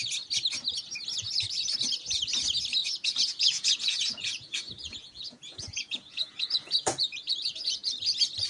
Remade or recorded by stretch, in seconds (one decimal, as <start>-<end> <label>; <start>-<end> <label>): 0.0-2.8 recorded; 2.8-7.9 remade; 7.9-8.5 recorded